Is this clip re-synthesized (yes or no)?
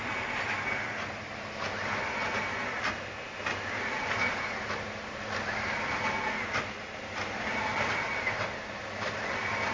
no